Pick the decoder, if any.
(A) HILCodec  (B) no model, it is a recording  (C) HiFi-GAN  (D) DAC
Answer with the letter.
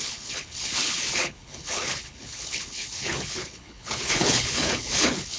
A